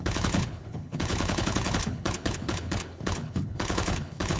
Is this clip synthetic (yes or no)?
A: yes